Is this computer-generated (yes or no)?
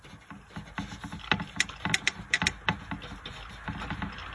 no